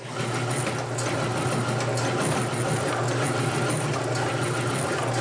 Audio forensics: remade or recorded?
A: recorded